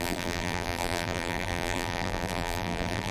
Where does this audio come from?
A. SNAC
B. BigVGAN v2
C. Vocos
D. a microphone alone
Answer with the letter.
B